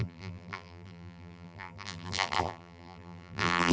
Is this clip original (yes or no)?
no